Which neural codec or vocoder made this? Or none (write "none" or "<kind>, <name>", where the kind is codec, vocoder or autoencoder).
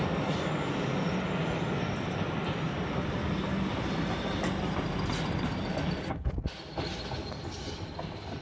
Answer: none